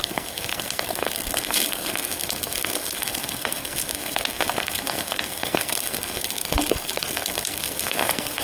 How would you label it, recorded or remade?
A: remade